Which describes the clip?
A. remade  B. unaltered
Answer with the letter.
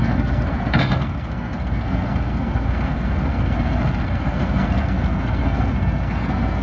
A